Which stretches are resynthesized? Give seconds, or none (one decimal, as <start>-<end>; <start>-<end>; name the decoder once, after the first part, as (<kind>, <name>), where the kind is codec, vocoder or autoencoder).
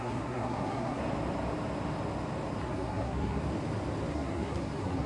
0.0-1.0 (codec, SNAC); 2.6-3.4; 4.1-5.1